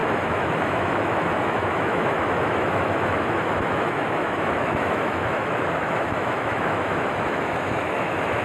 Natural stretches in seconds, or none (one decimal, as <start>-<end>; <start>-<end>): none